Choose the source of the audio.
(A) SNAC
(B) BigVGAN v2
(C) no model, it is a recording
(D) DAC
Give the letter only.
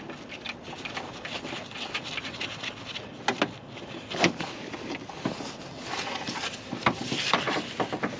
C